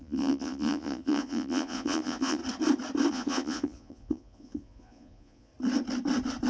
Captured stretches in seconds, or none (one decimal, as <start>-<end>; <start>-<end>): 2.4-3.1; 5.5-6.5